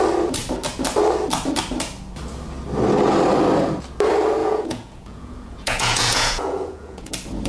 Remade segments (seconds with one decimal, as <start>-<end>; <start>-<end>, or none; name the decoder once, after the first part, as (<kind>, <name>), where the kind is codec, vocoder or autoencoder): 4.4-7.1 (vocoder, Vocos)